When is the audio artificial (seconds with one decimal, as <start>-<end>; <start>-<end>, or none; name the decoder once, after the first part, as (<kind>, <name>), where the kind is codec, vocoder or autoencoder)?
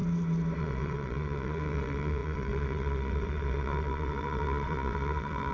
0.6-5.5 (vocoder, WaveNeXt)